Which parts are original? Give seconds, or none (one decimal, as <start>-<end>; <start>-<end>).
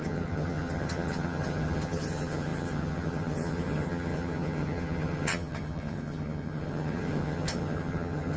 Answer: none